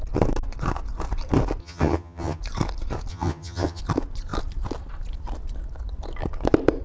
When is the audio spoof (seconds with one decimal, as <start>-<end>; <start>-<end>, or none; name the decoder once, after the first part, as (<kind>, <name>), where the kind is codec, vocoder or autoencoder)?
1.6-2.4 (vocoder, HiFi-GAN); 3.1-3.8